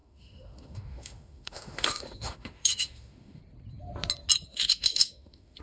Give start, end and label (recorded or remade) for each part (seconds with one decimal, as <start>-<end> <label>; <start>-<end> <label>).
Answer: 0.0-3.4 remade; 3.4-4.5 recorded; 4.5-5.6 remade